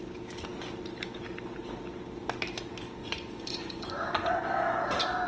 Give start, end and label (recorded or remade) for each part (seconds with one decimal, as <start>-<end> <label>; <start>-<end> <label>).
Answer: 0.0-3.0 recorded; 3.0-4.4 remade; 4.4-5.3 recorded